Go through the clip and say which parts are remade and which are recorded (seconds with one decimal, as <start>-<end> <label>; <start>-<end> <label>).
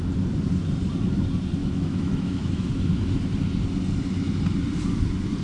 0.0-1.6 recorded; 1.6-2.7 remade; 2.7-5.4 recorded